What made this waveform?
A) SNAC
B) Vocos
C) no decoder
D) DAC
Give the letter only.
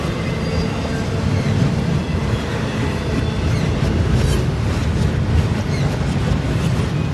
C